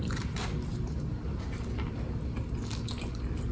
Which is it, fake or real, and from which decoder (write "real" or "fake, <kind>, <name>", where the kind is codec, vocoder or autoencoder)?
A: real